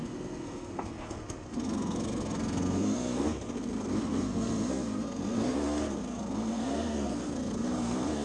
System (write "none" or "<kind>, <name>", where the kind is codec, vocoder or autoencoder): codec, SNAC